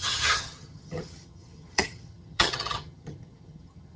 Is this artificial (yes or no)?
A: yes